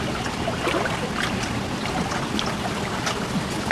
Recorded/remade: recorded